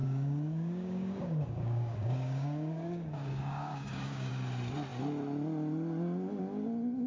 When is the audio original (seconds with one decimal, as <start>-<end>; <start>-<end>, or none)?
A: 4.3-7.1